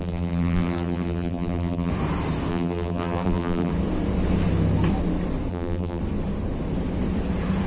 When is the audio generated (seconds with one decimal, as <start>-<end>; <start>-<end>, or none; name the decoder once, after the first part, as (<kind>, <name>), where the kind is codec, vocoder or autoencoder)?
0.0-1.9 (vocoder, BigVGAN v2); 2.5-3.7; 5.5-6.0